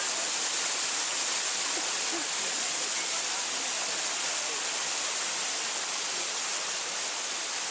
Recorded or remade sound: recorded